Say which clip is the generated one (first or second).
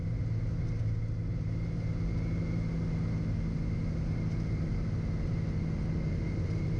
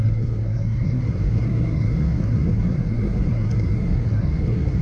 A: second